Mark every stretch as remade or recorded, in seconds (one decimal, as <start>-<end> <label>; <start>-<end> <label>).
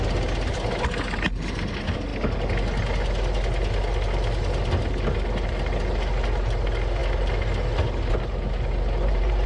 0.0-9.5 recorded